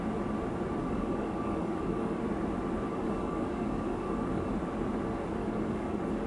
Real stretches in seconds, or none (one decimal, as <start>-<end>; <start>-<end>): 0.0-0.8; 2.2-2.9; 4.5-5.4